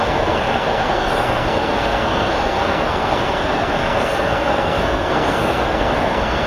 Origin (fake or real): fake